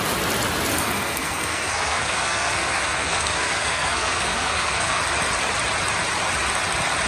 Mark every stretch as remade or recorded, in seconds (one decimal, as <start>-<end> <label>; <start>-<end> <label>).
0.0-0.7 recorded; 0.7-5.0 remade; 5.0-7.1 recorded